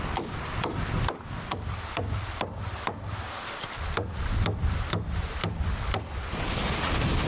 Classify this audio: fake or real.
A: real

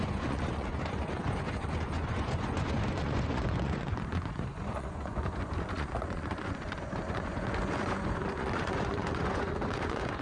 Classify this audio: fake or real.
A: fake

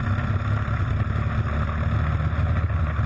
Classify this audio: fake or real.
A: real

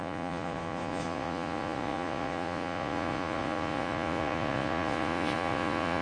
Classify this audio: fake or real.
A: fake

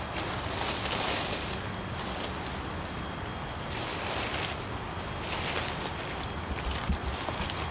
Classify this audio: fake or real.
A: real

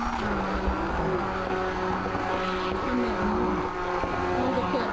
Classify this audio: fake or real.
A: real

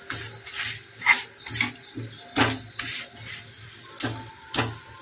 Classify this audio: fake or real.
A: real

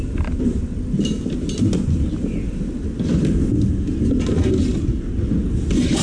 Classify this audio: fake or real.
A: real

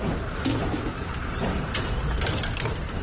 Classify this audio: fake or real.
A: real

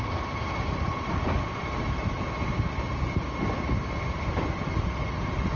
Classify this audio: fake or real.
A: real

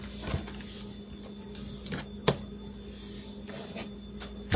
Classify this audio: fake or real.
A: real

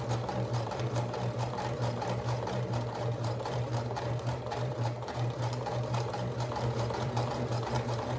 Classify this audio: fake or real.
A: fake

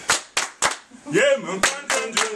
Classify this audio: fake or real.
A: real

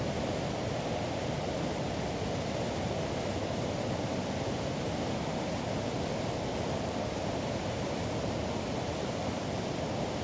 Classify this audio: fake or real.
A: real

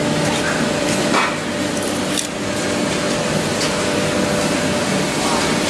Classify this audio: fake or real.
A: real